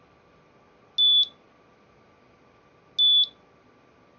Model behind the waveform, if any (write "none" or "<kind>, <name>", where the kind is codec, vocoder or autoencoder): none